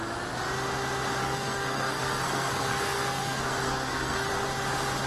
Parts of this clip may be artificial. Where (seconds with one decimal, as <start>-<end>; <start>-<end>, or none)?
1.2-4.3